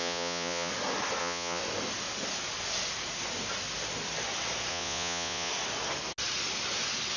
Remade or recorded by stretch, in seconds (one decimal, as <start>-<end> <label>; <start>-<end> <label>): 0.0-0.7 remade; 0.7-1.2 recorded; 1.2-1.6 remade; 1.6-4.7 recorded; 4.7-5.5 remade; 5.5-7.2 recorded